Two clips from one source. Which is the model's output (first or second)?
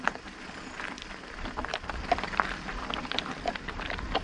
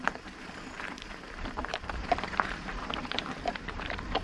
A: second